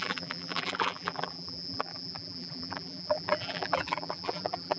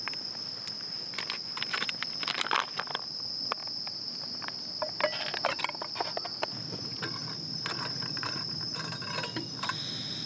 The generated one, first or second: first